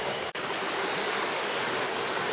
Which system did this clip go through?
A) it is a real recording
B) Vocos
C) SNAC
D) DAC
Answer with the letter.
D